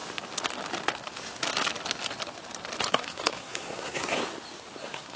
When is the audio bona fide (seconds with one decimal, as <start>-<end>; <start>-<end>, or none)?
0.0-2.9; 4.2-4.8

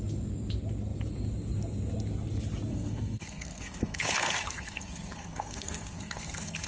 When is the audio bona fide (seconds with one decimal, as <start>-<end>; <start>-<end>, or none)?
0.0-2.7